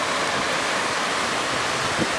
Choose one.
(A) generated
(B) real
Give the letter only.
B